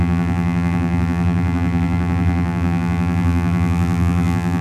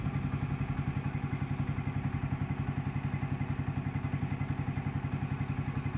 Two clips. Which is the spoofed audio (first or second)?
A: first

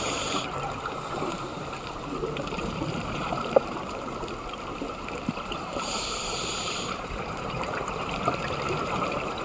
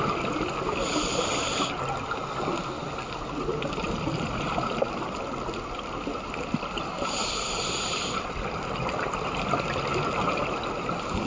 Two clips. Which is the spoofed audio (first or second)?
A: first